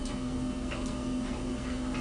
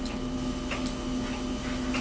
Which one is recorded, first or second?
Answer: second